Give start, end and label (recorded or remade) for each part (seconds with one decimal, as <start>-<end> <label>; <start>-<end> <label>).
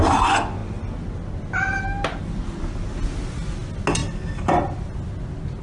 0.0-5.6 recorded